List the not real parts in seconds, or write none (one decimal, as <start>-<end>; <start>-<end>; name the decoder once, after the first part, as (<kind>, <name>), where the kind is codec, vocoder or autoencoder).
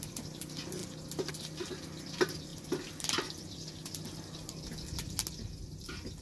none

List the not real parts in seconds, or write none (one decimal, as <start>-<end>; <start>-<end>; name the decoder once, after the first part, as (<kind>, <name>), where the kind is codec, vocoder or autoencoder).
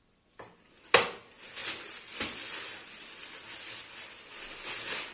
none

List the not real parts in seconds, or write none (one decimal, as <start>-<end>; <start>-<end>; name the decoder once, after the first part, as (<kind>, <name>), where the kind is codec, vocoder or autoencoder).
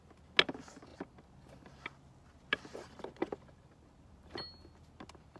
none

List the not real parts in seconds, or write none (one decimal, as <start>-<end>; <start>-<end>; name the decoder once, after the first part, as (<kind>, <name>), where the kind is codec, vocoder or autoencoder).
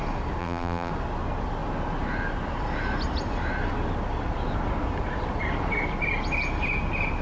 0.4-0.9 (vocoder, BigVGAN v2)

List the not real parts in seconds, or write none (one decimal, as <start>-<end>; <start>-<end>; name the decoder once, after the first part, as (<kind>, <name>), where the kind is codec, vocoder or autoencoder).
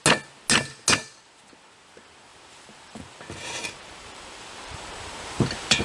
2.3-5.8 (vocoder, BigVGAN v2)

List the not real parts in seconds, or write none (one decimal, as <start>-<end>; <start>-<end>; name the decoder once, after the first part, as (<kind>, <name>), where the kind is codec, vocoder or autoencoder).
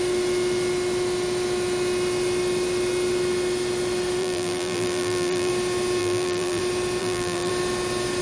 4.2-5.5 (vocoder, BigVGAN v2); 6.0-6.6; 7.0-7.5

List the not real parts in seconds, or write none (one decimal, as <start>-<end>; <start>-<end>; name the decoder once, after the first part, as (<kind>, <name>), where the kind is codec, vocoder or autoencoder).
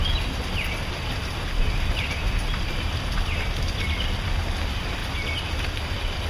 5.0-6.3 (vocoder, BigVGAN v2)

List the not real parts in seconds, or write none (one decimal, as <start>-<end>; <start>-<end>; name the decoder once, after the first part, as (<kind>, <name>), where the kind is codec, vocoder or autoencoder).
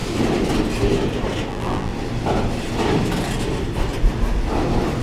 1.5-1.9 (vocoder, BigVGAN v2)